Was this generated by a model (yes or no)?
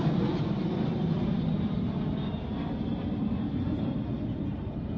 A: no